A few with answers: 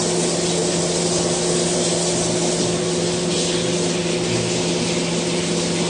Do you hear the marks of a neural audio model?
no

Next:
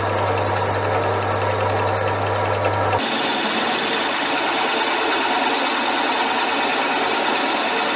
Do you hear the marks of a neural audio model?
no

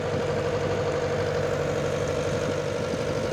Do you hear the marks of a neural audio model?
no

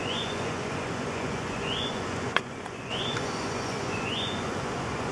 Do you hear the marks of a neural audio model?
yes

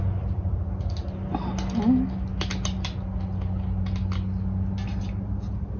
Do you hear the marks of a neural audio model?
no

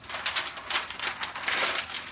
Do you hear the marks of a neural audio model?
no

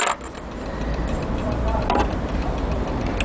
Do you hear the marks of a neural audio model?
no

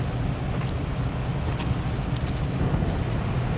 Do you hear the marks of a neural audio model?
no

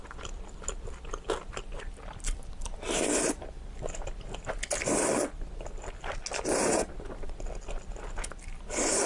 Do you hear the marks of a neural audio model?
no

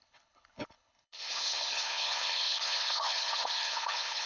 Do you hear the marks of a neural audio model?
yes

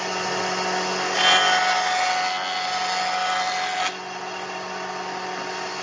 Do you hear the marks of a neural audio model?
no